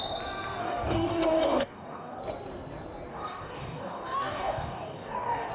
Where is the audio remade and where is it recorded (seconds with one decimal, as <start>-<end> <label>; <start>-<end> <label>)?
0.0-0.6 recorded; 0.6-2.2 remade; 2.2-3.1 recorded; 3.1-5.5 remade